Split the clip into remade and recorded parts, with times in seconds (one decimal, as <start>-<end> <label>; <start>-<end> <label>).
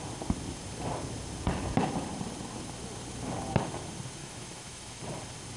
0.0-4.2 recorded; 4.2-5.0 remade; 5.0-5.6 recorded